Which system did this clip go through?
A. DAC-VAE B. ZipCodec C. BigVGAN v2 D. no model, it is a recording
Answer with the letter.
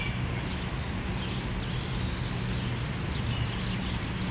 D